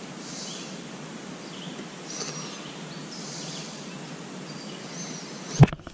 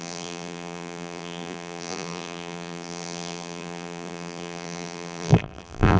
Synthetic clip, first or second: second